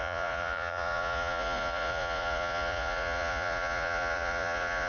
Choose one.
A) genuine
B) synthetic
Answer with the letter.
B